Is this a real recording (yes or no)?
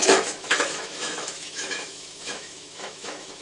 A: no